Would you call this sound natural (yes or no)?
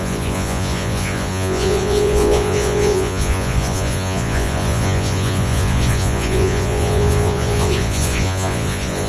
no